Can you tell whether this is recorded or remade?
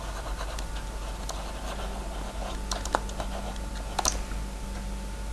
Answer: recorded